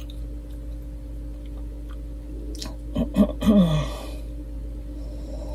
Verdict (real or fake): real